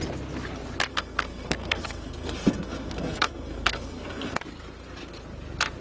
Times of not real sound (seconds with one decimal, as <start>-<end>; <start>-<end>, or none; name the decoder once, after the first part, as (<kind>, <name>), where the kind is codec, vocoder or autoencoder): 0.9-4.4 (codec, SNAC)